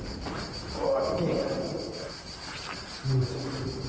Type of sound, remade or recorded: recorded